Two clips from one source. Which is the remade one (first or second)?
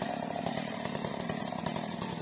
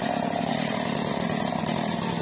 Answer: first